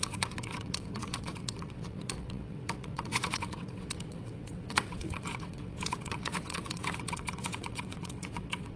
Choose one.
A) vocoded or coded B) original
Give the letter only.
A